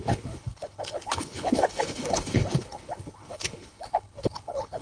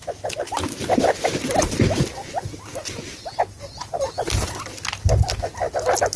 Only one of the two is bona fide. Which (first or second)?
second